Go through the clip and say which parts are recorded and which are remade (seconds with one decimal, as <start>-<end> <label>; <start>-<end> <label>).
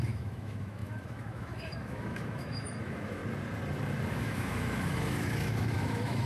0.0-3.2 remade; 3.2-4.1 recorded; 4.1-6.3 remade